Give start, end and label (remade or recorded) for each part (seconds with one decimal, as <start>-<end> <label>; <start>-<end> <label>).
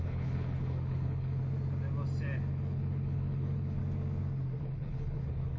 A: 0.0-1.4 remade; 1.4-2.5 recorded; 2.5-3.8 remade; 3.8-4.6 recorded; 4.6-5.6 remade